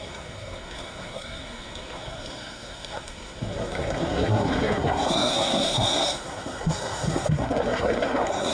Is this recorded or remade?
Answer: remade